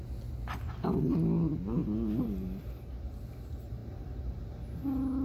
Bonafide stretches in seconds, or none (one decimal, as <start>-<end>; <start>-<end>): 0.0-3.8; 4.4-5.2